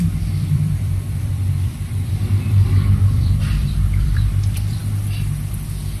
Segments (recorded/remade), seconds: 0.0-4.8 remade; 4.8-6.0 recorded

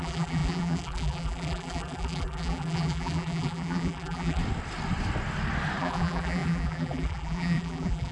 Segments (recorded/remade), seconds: 0.0-4.4 remade; 4.4-5.8 recorded; 5.8-8.1 remade

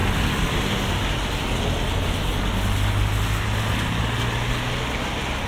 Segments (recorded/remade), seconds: 0.0-0.6 remade; 0.6-5.5 recorded